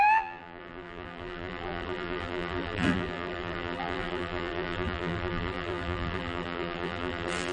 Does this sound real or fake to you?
fake